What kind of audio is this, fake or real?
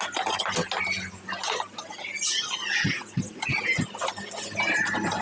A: real